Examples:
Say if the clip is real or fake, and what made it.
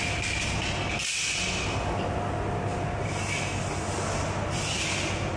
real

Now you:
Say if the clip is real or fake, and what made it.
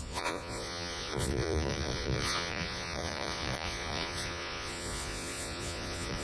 fake, vocoder, Vocos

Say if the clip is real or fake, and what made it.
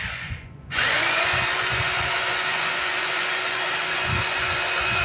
fake, vocoder, Vocos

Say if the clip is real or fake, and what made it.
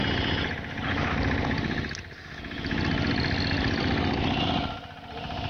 real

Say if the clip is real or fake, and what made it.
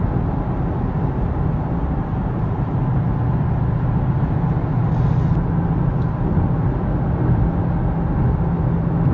real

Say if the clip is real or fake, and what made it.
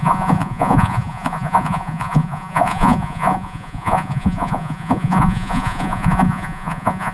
fake, vocoder, Vocos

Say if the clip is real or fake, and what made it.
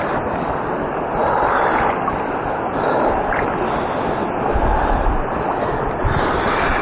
real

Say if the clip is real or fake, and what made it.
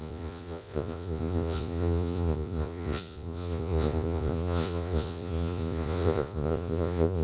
fake, vocoder, Vocos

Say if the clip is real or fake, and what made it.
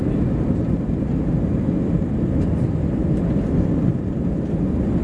real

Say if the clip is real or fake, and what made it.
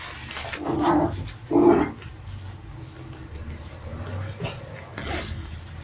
real